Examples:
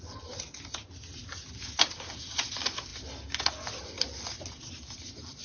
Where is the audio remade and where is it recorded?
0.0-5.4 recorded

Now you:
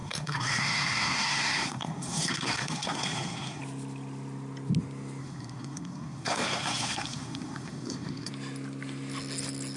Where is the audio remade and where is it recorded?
0.0-3.6 remade; 3.6-5.2 recorded; 5.2-8.3 remade; 8.3-9.8 recorded

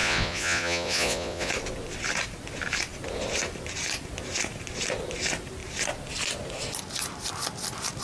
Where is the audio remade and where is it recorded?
0.0-1.5 remade; 1.5-8.0 recorded

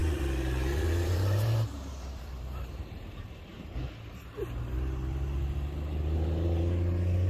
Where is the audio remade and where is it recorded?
0.0-3.8 remade; 3.8-7.3 recorded

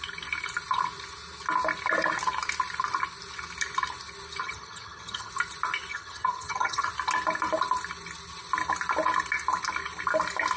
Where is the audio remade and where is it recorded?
0.0-4.4 recorded; 4.4-5.3 remade; 5.3-5.9 recorded; 5.9-6.9 remade; 6.9-10.6 recorded

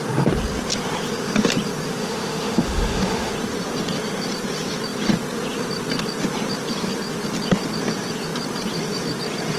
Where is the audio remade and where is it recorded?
0.0-2.0 recorded; 2.0-3.3 remade; 3.3-9.6 recorded

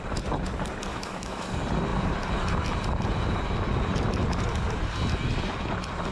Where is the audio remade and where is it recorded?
0.0-0.9 recorded; 0.9-1.5 remade; 1.5-6.1 recorded

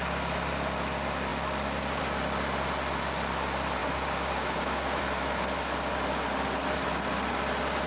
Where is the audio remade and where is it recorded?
0.0-3.8 recorded; 3.8-5.0 remade; 5.0-7.9 recorded